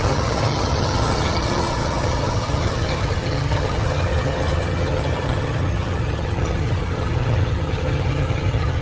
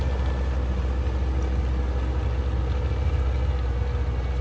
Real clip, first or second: second